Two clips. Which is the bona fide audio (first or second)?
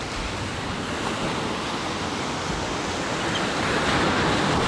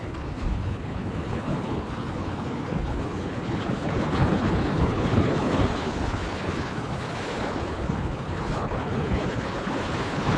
first